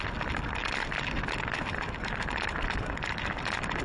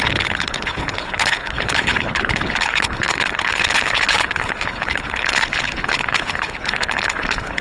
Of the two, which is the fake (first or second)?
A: second